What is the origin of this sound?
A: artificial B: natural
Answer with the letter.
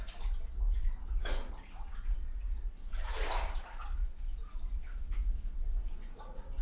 A